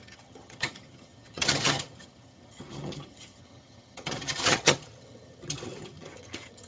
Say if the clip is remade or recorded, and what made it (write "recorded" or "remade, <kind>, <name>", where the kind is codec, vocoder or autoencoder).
remade, vocoder, HiFi-GAN